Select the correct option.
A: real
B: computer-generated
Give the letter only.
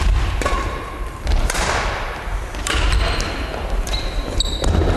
B